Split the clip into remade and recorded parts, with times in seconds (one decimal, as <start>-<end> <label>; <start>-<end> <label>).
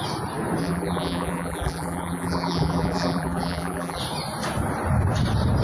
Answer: 0.0-0.6 recorded; 0.6-4.0 remade; 4.0-5.6 recorded